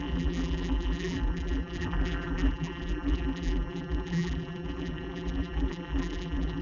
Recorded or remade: remade